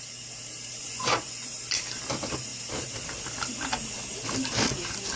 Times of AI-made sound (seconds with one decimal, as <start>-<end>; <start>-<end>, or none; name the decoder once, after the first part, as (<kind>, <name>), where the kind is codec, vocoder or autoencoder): 0.8-1.5 (vocoder, Vocos)